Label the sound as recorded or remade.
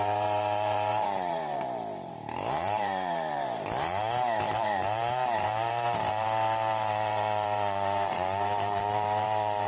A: remade